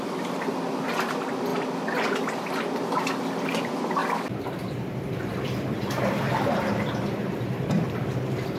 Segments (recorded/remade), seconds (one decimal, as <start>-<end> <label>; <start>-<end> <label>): 0.0-1.5 remade; 1.5-3.2 recorded; 3.2-8.6 remade